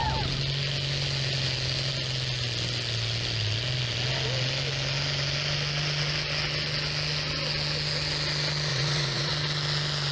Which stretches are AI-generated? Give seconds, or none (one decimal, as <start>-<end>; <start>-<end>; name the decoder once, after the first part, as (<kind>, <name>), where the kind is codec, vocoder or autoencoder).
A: 8.7-9.3 (vocoder, Vocos)